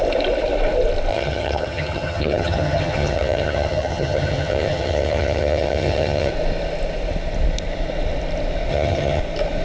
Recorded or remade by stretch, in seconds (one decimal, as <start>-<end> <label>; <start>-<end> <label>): 0.0-1.1 recorded; 1.1-6.3 remade; 6.3-8.7 recorded; 8.7-9.2 remade; 9.2-9.6 recorded